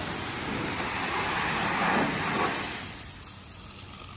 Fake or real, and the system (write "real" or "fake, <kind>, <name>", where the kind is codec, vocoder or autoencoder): real